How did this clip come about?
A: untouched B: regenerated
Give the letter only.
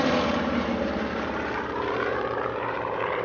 B